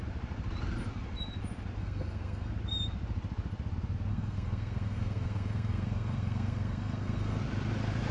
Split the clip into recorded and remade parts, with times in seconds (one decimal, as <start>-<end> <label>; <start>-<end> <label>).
0.0-1.8 recorded; 1.8-2.5 remade; 2.5-4.1 recorded; 4.1-7.4 remade; 7.4-8.1 recorded